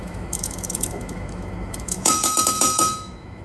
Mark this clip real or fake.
fake